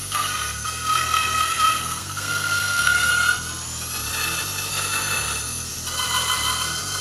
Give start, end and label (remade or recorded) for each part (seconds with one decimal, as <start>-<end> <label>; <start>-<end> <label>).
0.0-3.1 remade; 3.1-4.7 recorded; 4.7-5.7 remade; 5.7-7.0 recorded